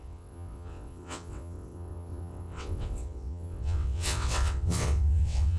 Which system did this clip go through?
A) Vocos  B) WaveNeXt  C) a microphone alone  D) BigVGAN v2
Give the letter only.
B